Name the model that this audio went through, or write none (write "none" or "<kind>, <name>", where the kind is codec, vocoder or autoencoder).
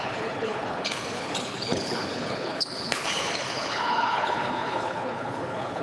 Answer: codec, HILCodec